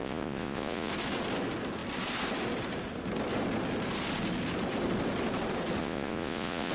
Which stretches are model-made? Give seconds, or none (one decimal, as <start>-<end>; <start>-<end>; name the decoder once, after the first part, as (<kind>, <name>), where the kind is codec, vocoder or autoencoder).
0.0-0.9 (vocoder, Vocos); 5.8-6.7